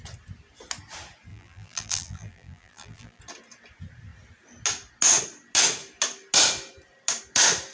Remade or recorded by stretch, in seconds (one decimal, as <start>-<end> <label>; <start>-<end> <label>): 0.0-1.3 recorded; 1.3-3.2 remade; 3.2-7.7 recorded